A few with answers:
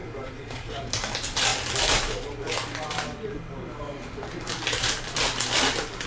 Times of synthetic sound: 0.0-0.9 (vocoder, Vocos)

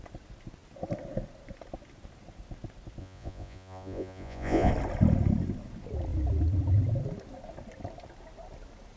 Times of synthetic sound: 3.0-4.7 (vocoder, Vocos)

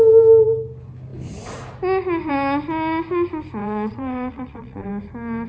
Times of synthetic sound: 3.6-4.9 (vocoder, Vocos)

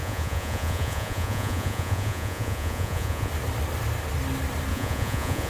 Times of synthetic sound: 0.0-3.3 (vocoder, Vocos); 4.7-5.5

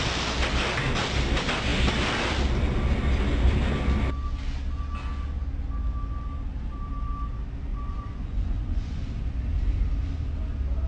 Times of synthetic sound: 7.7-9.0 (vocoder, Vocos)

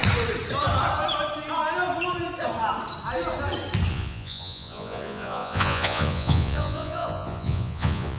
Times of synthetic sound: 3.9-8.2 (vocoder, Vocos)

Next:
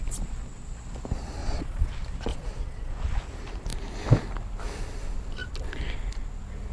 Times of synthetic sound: 1.4-1.9 (vocoder, Vocos); 2.3-2.9